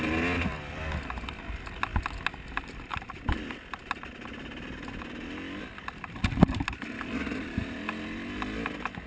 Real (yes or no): yes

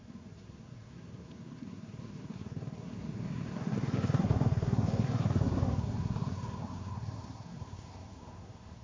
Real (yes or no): no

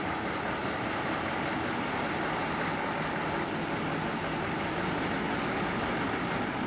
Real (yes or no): yes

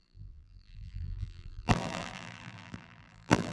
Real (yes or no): no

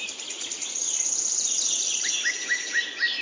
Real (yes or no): yes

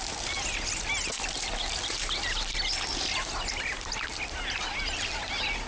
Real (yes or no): yes